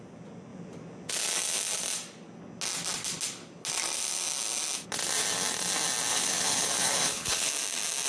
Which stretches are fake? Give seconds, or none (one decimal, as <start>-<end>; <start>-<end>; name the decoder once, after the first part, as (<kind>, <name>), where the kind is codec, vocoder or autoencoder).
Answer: 6.1-7.5 (codec, HILCodec)